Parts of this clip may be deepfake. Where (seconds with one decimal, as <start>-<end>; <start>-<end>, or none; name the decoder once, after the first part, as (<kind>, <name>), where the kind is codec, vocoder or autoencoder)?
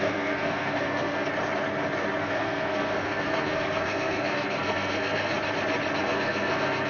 0.0-1.3 (codec, SNAC); 2.2-5.3; 6.0-6.9